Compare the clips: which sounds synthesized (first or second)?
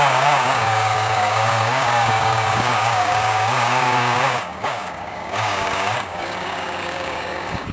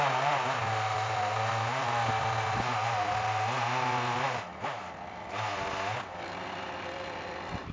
first